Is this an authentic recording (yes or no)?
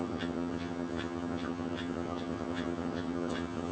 no